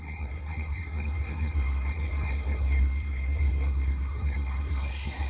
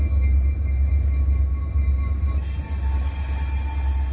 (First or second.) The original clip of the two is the second